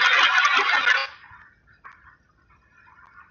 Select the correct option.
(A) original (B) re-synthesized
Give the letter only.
A